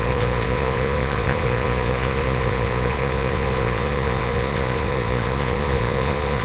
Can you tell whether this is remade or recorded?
remade